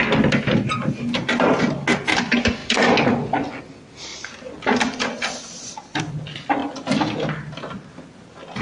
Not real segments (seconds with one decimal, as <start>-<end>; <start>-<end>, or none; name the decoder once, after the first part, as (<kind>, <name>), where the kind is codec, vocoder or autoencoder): none